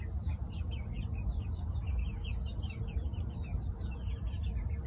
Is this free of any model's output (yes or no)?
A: yes